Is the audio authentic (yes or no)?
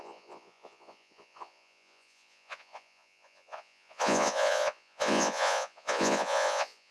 no